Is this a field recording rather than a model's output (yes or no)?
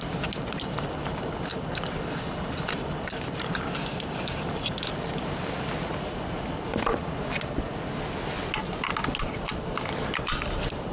yes